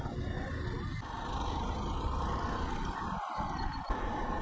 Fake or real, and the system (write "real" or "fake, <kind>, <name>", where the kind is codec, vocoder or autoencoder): real